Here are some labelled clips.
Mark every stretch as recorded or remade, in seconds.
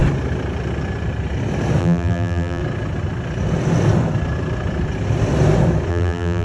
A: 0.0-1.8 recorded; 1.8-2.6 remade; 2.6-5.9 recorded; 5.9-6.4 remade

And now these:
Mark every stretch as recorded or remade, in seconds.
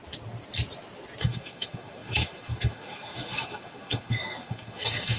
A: 0.0-1.2 recorded; 1.2-5.2 remade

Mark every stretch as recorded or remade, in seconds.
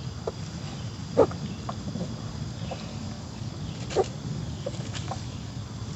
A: 0.0-2.9 recorded; 2.9-3.5 remade; 3.5-4.3 recorded; 4.3-5.6 remade; 5.6-6.0 recorded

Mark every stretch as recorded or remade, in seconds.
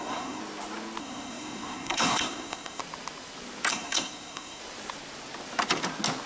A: 0.0-0.4 remade; 0.4-1.0 recorded; 1.0-2.8 remade; 2.8-3.7 recorded; 3.7-4.6 remade; 4.6-6.3 recorded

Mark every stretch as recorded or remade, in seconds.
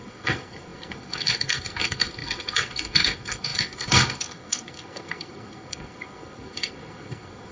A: 0.0-7.5 remade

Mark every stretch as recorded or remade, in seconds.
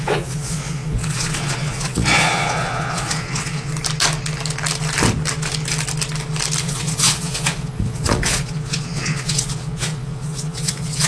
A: 0.0-3.7 remade; 3.7-6.6 recorded; 6.6-11.1 remade